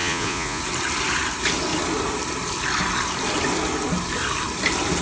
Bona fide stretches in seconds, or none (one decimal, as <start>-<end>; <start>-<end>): 0.6-5.0